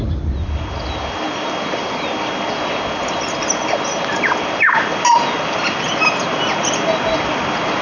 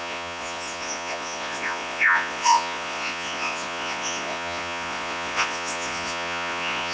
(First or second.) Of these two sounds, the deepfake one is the second